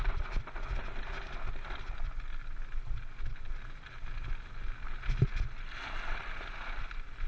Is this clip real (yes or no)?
yes